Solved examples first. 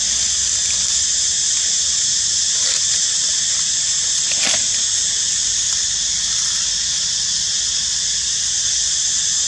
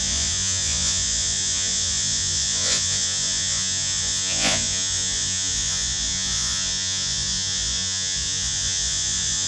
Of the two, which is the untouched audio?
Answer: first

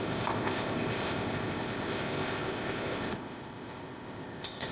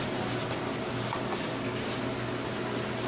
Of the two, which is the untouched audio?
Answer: second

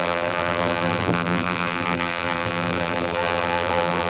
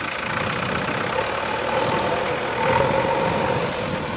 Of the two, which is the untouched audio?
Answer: second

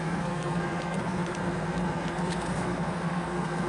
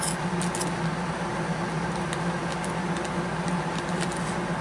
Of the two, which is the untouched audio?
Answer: second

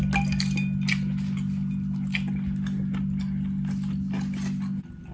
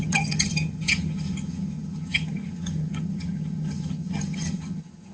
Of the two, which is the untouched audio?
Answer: first